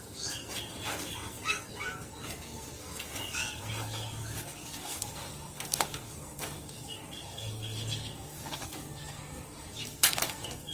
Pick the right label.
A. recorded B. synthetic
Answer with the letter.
B